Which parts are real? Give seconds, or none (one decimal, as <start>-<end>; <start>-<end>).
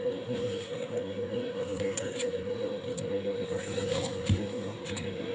none